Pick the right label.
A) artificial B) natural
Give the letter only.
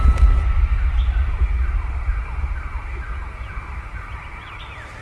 B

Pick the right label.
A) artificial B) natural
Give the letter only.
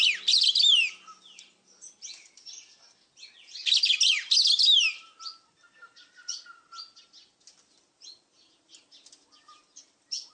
B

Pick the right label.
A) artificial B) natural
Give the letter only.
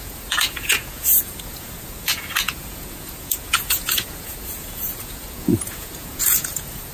A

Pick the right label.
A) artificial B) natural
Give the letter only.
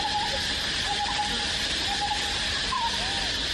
B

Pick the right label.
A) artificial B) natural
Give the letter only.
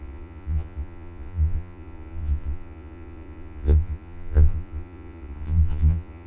A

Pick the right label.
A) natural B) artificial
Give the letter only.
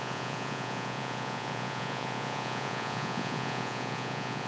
B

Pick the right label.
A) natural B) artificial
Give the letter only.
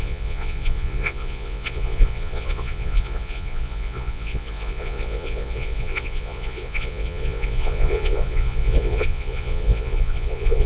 B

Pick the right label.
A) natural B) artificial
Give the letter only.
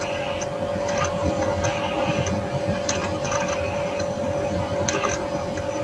A